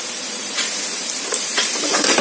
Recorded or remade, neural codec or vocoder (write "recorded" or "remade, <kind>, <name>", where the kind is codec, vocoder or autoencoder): remade, vocoder, BigVGAN v2